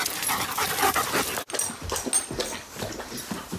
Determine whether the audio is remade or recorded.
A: recorded